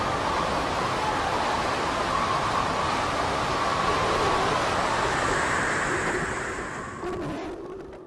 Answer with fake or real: real